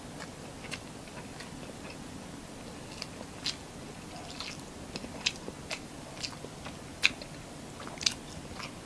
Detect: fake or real real